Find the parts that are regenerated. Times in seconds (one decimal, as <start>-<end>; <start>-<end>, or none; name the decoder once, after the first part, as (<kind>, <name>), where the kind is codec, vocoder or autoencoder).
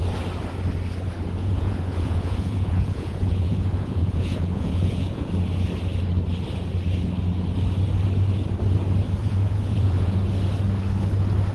1.4-5.3 (vocoder, Vocos); 9.2-10.2